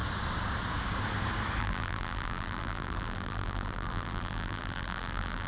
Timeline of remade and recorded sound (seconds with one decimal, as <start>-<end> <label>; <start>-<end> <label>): 0.0-1.6 recorded; 1.6-5.5 remade